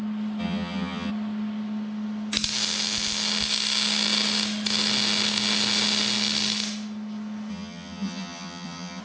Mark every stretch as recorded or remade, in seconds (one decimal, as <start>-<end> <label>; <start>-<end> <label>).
0.0-0.4 recorded; 0.4-1.1 remade; 1.1-7.5 recorded; 7.5-9.0 remade